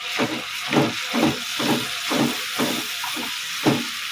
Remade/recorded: recorded